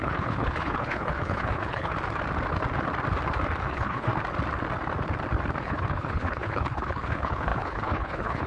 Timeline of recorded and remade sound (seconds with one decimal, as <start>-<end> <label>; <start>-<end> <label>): 0.0-1.9 remade; 1.9-3.6 recorded; 3.6-4.1 remade; 4.1-5.6 recorded; 5.6-8.5 remade